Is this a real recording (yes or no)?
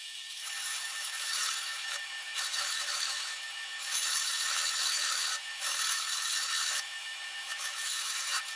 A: no